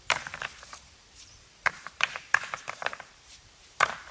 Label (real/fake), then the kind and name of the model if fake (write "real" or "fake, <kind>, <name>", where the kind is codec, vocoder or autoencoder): fake, vocoder, BigVGAN v2